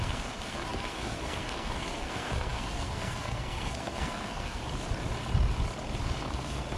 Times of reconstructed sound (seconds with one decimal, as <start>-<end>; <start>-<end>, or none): 0.0-4.6; 6.3-6.8